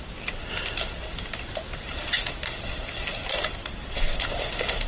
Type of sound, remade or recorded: recorded